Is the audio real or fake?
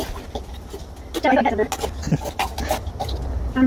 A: real